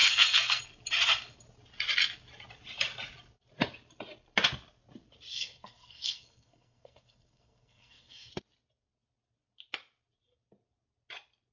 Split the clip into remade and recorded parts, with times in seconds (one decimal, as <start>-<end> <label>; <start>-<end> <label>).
0.0-0.6 remade; 0.6-5.3 recorded; 5.3-8.3 remade; 8.3-11.5 recorded